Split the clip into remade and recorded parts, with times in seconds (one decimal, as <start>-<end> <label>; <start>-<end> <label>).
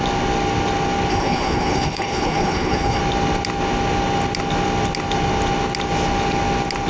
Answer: 0.0-1.1 recorded; 1.1-3.0 remade; 3.0-6.9 recorded